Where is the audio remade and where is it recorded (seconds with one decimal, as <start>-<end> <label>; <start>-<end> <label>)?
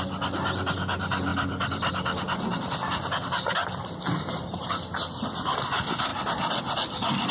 0.0-7.3 recorded